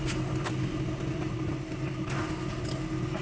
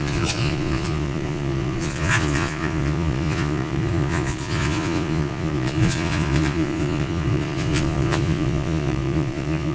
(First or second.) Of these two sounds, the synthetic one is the second